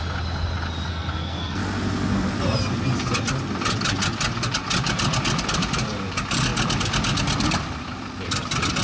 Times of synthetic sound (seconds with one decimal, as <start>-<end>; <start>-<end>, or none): 0.9-1.6